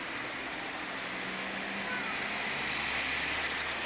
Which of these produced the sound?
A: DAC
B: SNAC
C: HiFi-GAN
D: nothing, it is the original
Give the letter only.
D